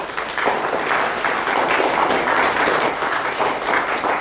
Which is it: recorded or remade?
recorded